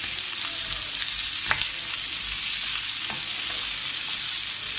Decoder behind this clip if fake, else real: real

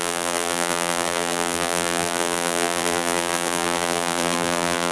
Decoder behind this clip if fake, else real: fake, vocoder, BigVGAN v2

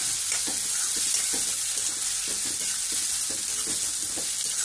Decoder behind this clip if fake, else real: real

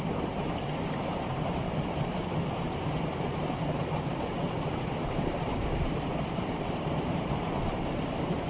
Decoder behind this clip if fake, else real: fake, vocoder, BigVGAN v2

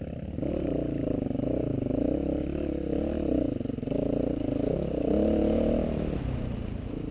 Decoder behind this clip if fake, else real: real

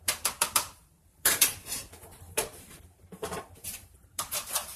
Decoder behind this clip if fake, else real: fake, vocoder, BigVGAN v2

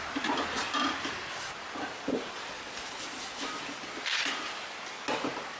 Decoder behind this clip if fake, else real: real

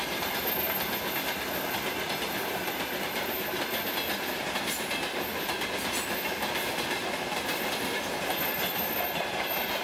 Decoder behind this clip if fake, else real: real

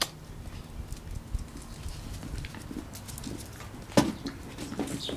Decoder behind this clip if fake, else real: real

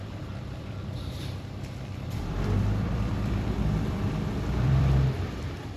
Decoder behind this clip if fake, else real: fake, vocoder, BigVGAN v2